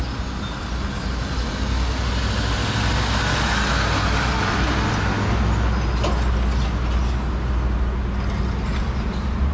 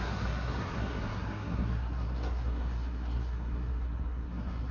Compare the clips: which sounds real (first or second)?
first